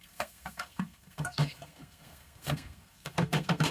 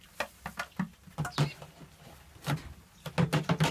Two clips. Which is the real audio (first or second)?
second